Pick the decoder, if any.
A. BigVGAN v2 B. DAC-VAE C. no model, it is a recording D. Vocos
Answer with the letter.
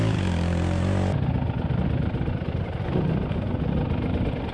C